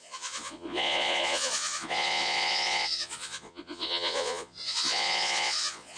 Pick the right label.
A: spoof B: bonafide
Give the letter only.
A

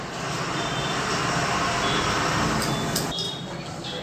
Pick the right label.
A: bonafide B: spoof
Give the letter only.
A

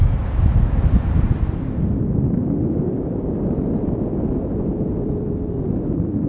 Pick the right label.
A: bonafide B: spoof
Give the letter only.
A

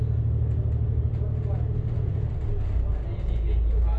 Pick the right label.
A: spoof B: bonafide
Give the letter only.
B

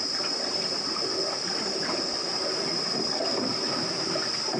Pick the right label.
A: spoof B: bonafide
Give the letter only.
A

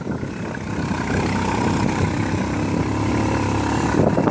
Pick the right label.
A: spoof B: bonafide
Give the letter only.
B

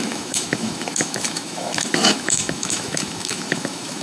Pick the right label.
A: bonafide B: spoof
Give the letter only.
B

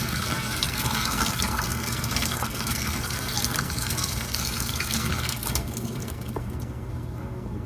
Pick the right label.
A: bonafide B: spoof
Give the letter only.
B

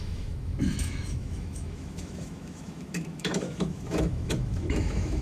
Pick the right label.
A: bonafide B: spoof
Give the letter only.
B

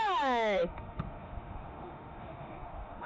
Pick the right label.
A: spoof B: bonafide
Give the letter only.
A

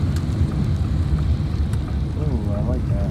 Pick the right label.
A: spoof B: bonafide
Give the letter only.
B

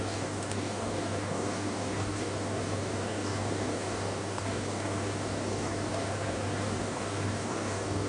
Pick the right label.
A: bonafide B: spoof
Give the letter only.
B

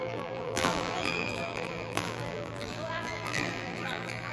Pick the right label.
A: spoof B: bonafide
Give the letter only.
A